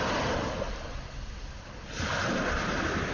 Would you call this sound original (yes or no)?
yes